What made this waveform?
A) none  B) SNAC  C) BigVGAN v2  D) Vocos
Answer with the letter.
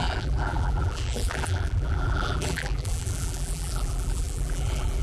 C